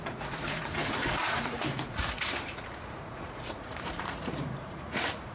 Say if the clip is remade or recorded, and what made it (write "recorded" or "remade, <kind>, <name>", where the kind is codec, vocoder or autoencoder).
remade, vocoder, Vocos